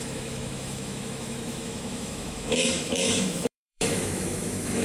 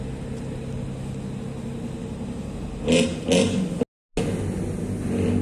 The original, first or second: second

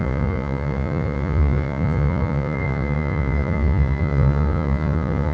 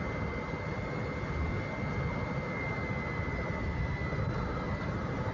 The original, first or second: second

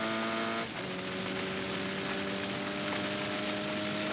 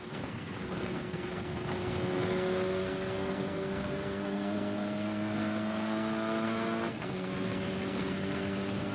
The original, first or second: first